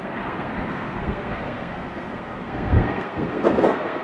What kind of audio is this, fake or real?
fake